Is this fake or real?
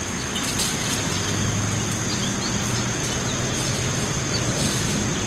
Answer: real